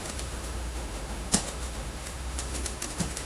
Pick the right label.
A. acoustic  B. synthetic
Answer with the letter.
B